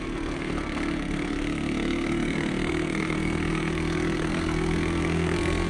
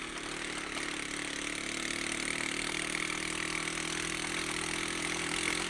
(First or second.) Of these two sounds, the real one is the second